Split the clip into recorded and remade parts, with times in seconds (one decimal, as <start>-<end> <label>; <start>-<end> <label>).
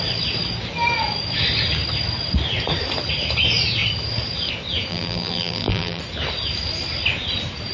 0.0-4.9 recorded; 4.9-6.0 remade; 6.0-7.7 recorded